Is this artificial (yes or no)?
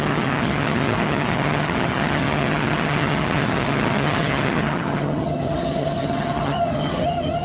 yes